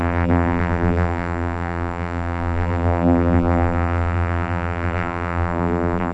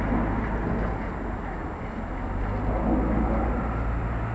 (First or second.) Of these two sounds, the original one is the second